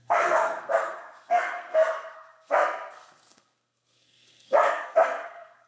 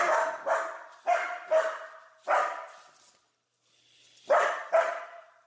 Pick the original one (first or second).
second